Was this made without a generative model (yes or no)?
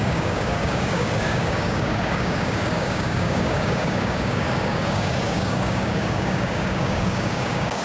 no